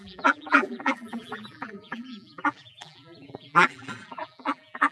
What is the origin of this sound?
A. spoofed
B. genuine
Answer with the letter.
A